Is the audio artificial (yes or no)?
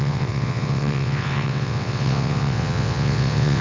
yes